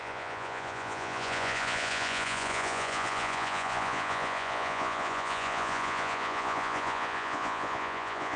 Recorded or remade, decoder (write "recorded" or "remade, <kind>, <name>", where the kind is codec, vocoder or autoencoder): remade, vocoder, Vocos